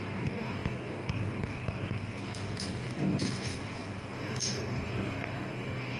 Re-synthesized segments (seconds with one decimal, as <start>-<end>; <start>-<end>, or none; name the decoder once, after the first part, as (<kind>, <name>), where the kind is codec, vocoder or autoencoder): 0.0-6.0 (codec, DAC)